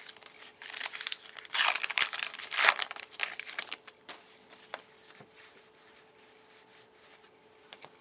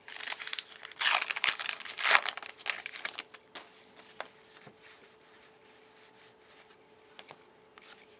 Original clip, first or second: second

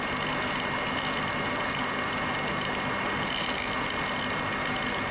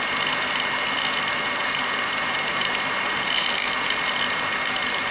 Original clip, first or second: first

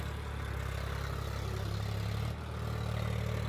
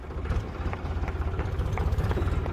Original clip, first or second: first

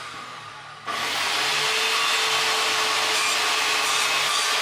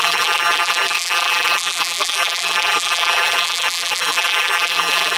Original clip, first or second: first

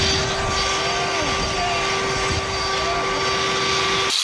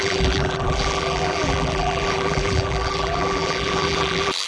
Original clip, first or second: first